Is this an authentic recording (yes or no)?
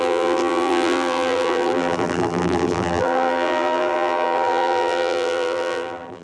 no